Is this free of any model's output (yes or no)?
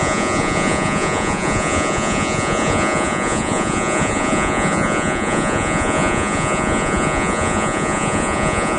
no